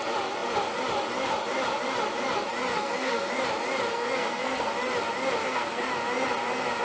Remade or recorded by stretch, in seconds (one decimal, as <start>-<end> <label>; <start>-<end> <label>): 0.0-2.7 recorded; 2.7-3.3 remade; 3.3-3.9 recorded; 3.9-4.7 remade; 4.7-5.4 recorded; 5.4-5.9 remade; 5.9-6.8 recorded